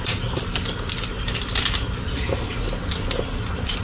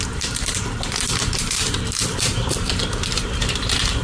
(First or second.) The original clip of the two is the first